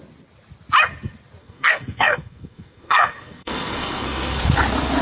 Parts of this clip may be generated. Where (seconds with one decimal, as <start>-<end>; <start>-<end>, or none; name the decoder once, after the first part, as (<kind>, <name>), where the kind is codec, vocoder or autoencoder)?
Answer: 1.4-4.4 (codec, SNAC)